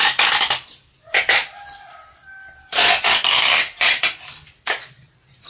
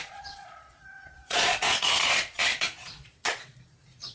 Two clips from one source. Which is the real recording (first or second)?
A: first